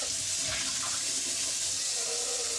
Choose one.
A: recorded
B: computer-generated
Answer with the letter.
A